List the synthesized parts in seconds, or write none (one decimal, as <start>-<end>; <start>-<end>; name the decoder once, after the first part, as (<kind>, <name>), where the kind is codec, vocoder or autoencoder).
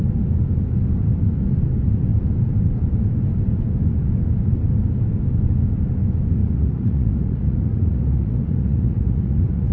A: 6.4-9.7 (vocoder, Vocos)